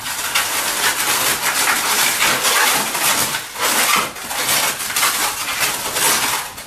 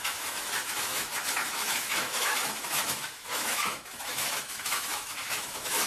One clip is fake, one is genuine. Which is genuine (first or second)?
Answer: first